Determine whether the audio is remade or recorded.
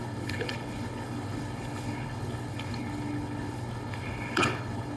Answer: remade